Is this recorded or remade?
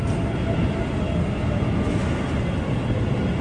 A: recorded